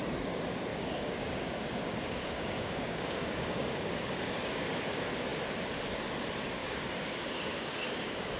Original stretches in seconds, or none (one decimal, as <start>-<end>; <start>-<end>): 0.0-0.7; 4.8-6.6